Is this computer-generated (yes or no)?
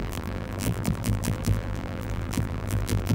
yes